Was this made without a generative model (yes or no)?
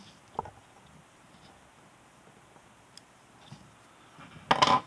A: yes